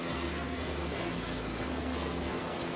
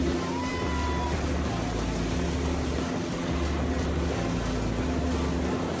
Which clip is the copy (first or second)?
first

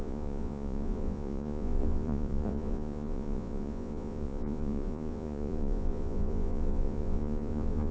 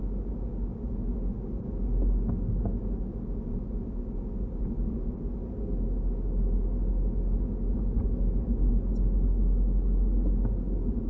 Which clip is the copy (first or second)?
first